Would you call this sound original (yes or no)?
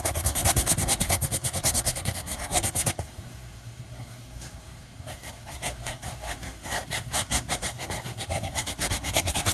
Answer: no